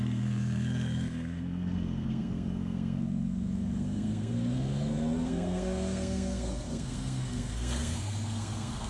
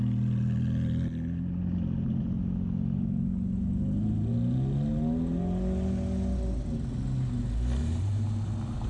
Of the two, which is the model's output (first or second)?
first